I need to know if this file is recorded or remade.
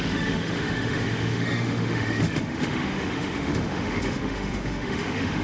remade